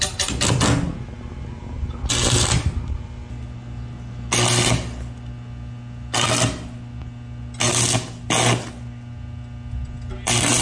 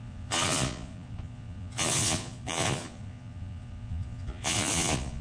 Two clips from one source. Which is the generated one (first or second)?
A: second